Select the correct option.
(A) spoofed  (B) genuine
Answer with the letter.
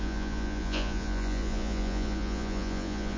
A